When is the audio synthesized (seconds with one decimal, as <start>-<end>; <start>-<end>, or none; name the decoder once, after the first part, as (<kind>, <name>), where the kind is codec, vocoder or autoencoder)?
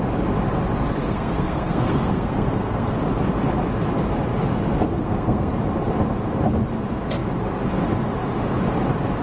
1.0-3.0 (codec, SNAC); 4.9-5.5